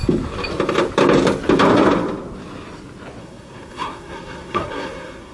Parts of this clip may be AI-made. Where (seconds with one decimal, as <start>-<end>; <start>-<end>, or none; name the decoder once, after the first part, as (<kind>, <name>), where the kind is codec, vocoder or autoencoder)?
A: 3.2-5.3 (codec, SNAC)